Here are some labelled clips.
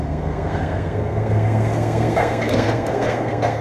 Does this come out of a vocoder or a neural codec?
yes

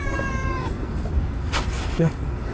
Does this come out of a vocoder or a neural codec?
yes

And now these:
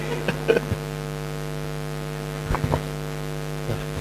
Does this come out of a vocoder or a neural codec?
no